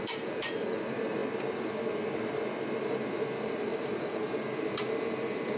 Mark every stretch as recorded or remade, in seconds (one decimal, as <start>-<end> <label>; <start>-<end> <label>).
0.0-1.2 remade; 1.2-2.8 recorded; 2.8-5.6 remade